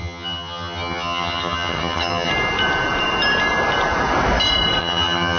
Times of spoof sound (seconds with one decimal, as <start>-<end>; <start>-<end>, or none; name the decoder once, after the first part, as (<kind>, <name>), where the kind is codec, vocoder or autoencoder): 0.0-2.3 (vocoder, HiFi-GAN); 4.8-5.4